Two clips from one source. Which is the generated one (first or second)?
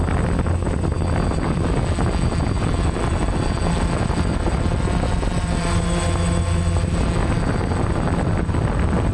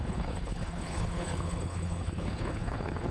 second